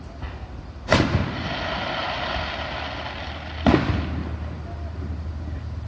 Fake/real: real